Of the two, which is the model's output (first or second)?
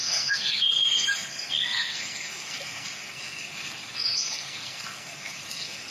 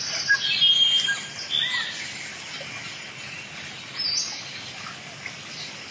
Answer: first